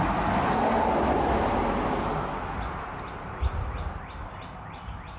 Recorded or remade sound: recorded